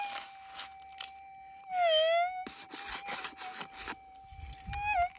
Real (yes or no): yes